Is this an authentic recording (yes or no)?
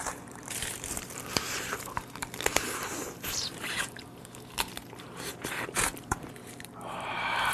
no